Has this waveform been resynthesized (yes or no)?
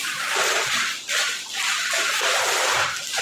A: no